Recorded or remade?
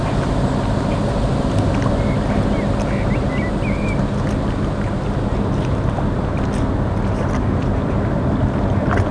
recorded